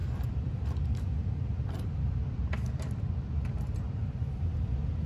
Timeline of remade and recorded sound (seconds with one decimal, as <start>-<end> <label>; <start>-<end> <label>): 0.0-5.1 remade